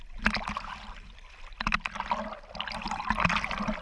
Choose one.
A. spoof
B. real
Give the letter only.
B